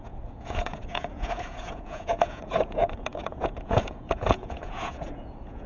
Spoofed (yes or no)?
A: yes